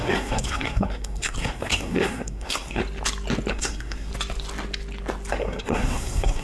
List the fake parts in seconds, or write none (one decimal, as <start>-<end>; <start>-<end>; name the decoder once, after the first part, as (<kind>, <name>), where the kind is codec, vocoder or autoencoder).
0.0-2.8 (codec, SNAC); 3.5-4.1; 5.3-6.4